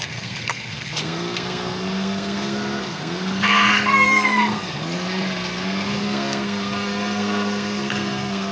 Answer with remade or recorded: remade